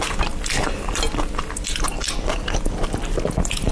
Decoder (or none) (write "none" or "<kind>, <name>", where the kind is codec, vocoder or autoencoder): none